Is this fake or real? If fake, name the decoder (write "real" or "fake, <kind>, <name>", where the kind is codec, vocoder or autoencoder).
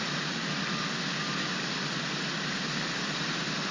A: real